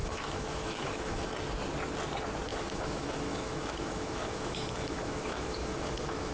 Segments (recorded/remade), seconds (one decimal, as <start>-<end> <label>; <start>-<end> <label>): 0.0-1.3 remade; 1.3-2.5 recorded; 2.5-6.3 remade